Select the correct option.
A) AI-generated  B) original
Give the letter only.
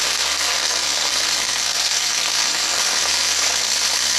A